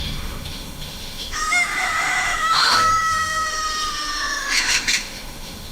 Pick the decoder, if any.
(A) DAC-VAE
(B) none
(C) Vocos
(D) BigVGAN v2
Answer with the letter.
A